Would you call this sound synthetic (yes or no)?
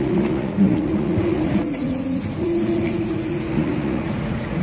yes